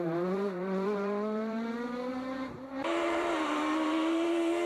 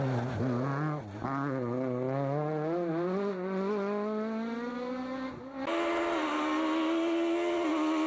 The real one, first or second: second